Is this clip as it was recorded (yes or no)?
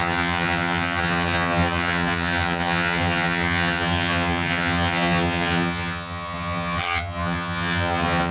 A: no